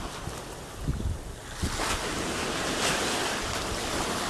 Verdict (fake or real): real